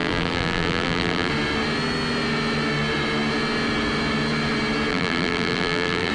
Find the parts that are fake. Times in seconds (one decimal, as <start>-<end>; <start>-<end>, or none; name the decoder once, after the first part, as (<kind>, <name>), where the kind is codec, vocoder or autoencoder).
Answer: 0.0-1.3 (vocoder, BigVGAN v2); 4.9-6.1